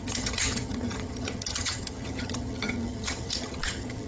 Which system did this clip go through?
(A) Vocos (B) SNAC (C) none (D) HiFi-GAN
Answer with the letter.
D